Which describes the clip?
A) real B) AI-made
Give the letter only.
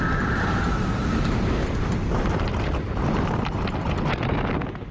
A